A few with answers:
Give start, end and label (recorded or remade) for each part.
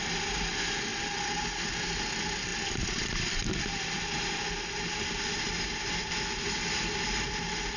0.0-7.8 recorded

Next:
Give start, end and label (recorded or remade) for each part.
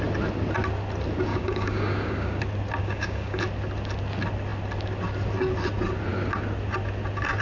0.0-1.3 recorded; 1.3-2.4 remade; 2.4-2.8 recorded; 2.8-3.4 remade; 3.4-7.4 recorded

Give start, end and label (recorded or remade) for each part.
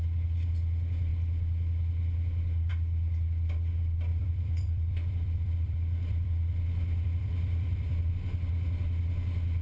0.0-4.1 recorded; 4.1-8.1 remade; 8.1-9.6 recorded